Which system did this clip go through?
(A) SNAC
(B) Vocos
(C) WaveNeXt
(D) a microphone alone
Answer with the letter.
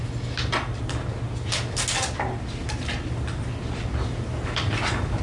D